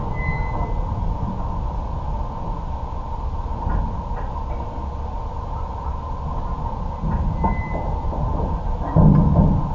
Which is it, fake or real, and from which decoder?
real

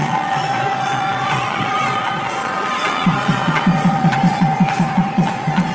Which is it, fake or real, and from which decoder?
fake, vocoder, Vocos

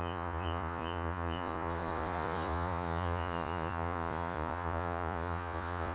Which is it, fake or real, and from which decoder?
fake, vocoder, Vocos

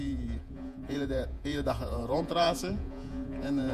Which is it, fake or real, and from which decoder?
fake, vocoder, Vocos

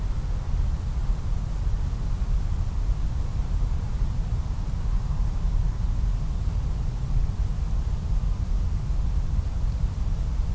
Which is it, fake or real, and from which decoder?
real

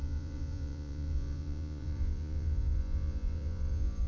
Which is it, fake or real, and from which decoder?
fake, vocoder, Vocos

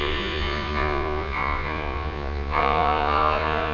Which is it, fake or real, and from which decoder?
fake, vocoder, Vocos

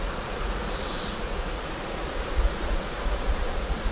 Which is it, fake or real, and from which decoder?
fake, vocoder, Vocos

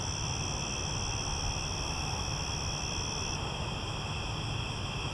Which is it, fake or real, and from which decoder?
real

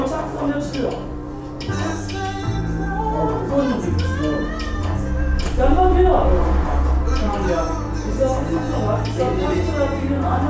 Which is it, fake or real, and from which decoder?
real